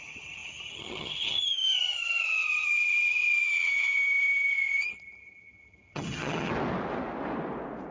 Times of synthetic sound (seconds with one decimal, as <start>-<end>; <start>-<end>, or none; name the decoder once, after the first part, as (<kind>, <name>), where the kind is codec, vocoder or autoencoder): 0.0-6.5 (vocoder, HiFi-GAN)